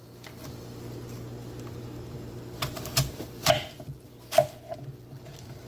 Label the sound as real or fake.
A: real